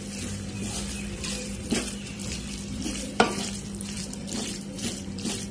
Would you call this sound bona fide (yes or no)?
no